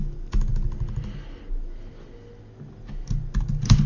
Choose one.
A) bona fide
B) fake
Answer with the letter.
A